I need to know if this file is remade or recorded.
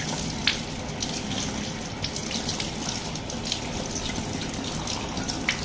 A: recorded